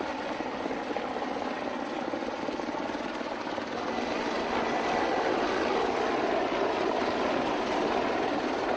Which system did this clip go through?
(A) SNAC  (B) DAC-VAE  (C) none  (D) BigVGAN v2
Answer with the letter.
C